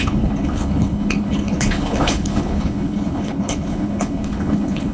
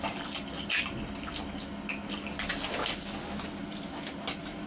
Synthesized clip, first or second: first